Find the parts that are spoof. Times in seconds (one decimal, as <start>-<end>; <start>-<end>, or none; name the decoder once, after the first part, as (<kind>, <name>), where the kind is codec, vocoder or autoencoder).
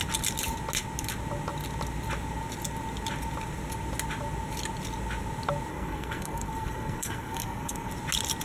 5.7-7.9 (codec, SNAC)